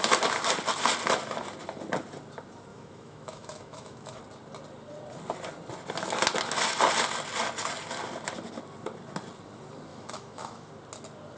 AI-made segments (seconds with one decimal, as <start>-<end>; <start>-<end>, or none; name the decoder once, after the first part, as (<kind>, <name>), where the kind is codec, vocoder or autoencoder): 2.7-4.2 (autoencoder, DAC-VAE); 9.9-10.7